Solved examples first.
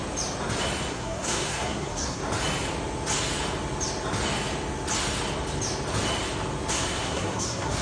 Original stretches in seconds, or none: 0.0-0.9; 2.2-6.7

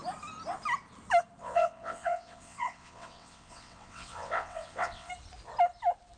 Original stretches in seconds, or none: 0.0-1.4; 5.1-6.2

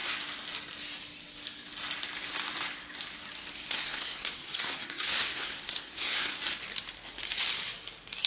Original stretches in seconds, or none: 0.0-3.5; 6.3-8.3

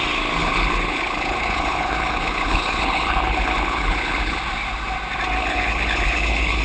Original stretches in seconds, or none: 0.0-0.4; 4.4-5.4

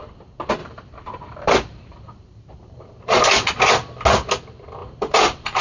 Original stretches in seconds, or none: 0.0-0.6; 3.7-4.8